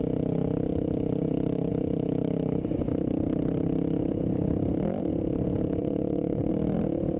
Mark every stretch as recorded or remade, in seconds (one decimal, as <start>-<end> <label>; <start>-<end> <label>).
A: 0.0-5.8 recorded; 5.8-6.5 remade; 6.5-7.2 recorded